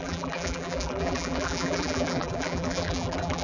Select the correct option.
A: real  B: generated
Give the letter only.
B